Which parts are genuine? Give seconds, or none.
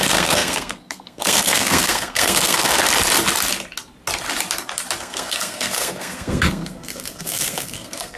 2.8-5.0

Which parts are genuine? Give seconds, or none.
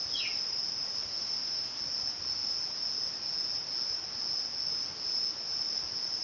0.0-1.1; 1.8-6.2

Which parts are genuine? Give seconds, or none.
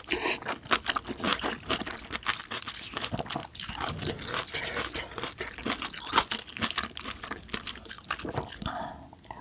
0.0-1.3; 1.9-9.4